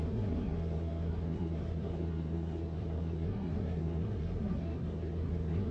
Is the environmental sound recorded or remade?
remade